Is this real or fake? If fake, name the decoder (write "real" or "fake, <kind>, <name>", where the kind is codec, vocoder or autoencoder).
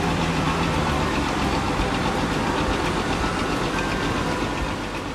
fake, vocoder, BigVGAN v2